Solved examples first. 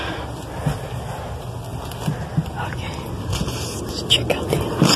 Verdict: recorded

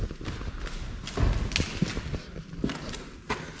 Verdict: recorded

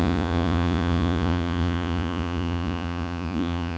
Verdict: remade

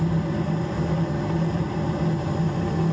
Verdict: recorded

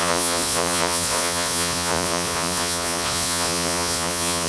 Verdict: remade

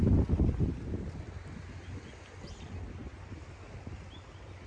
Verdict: recorded